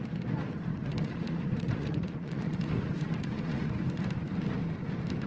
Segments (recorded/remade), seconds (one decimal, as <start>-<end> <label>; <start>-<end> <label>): 0.0-0.7 recorded; 0.7-3.7 remade; 3.7-5.3 recorded